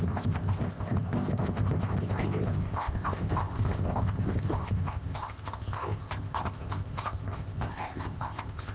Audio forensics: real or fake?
fake